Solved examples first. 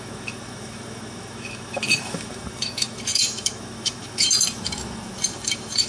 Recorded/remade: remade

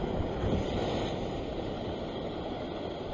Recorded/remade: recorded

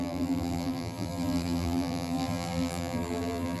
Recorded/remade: remade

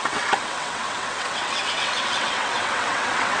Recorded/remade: remade